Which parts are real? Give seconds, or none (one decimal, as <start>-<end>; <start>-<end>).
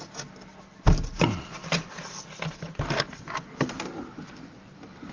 0.0-5.1